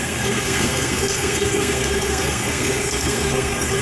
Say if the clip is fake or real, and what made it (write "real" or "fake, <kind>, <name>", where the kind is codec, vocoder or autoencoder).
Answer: fake, codec, SNAC